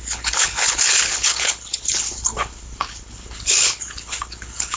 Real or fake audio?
fake